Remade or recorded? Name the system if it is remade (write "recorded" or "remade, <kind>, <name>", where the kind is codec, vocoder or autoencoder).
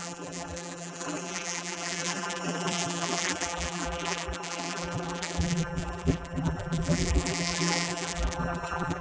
remade, vocoder, BigVGAN v2